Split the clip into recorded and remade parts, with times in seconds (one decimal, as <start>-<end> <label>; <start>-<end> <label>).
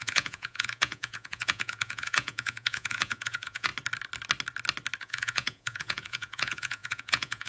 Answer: 0.0-3.7 remade; 3.7-5.0 recorded; 5.0-7.5 remade